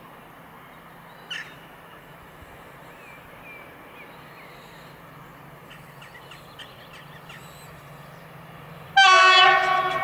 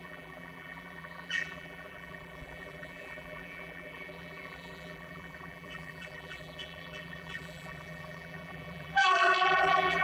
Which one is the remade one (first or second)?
second